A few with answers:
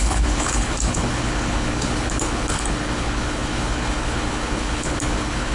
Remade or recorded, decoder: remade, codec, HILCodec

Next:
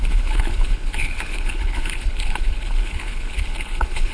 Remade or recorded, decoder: remade, codec, HILCodec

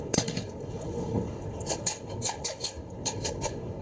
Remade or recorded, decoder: remade, codec, HILCodec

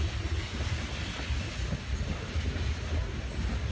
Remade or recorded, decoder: recorded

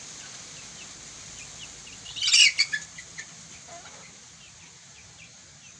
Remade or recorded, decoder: recorded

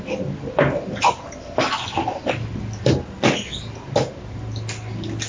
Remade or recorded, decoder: recorded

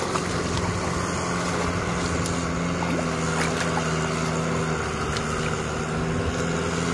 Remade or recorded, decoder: recorded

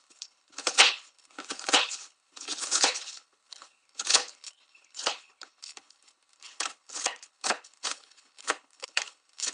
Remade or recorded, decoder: remade, codec, HILCodec